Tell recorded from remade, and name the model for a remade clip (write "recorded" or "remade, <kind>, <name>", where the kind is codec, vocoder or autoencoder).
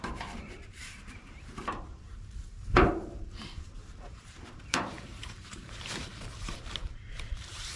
remade, vocoder, BigVGAN v2